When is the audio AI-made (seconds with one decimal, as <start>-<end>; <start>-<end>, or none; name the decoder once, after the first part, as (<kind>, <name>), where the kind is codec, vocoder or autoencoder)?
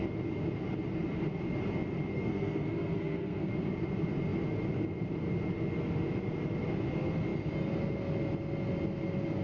2.1-3.5 (codec, SNAC)